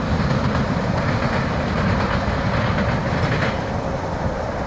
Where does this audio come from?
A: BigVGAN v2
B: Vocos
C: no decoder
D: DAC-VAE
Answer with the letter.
A